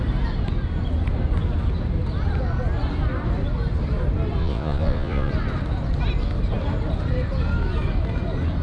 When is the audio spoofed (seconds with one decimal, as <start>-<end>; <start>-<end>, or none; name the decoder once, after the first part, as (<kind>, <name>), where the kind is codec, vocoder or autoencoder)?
4.4-5.3 (vocoder, Vocos)